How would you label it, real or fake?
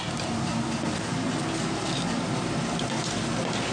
real